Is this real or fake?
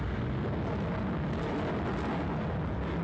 real